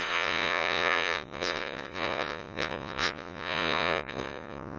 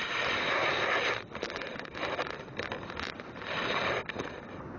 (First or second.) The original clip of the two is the second